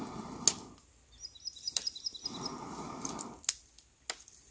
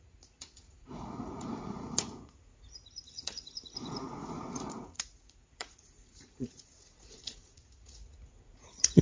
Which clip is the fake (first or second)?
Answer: second